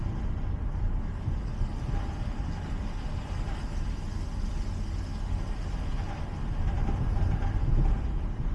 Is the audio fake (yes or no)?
no